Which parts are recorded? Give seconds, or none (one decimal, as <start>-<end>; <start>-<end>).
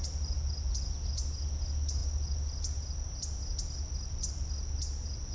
0.0-5.3